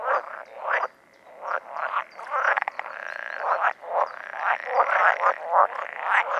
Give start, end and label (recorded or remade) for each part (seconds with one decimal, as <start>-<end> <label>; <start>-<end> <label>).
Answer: 0.0-6.4 recorded